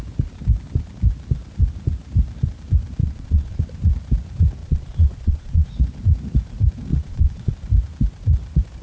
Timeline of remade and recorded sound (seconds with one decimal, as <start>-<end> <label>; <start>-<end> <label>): 0.0-3.0 recorded; 3.0-3.6 remade; 3.6-4.6 recorded; 4.6-5.8 remade; 5.8-6.9 recorded; 6.9-7.5 remade; 7.5-8.8 recorded